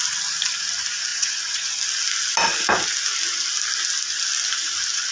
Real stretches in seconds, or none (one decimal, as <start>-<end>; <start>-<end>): 0.0-1.1; 1.7-5.1